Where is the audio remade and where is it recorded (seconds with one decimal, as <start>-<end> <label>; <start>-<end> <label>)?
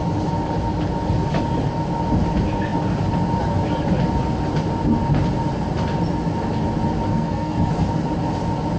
0.0-7.1 recorded; 7.1-7.7 remade; 7.7-8.8 recorded